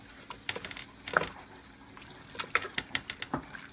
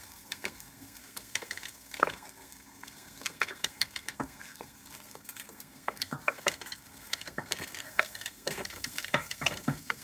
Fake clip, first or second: second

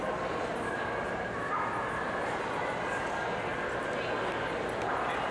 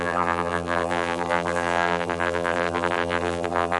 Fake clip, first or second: second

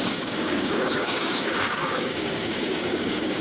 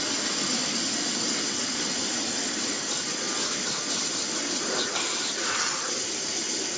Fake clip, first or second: first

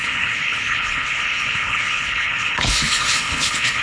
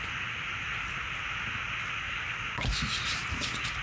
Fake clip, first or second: first